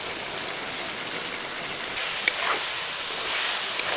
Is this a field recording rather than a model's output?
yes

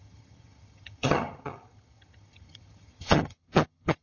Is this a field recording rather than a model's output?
no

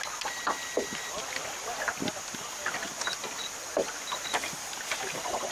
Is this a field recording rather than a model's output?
yes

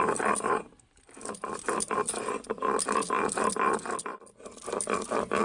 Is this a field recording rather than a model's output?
yes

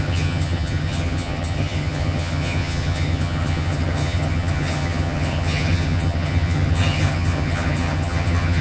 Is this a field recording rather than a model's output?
no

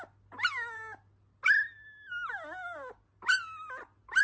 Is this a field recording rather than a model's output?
yes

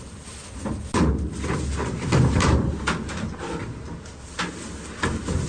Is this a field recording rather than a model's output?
yes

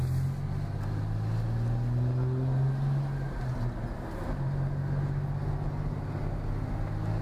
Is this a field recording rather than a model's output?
yes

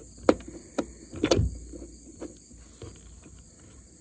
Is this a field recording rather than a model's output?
yes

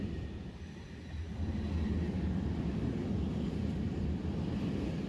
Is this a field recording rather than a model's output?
yes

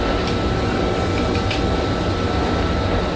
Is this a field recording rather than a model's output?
yes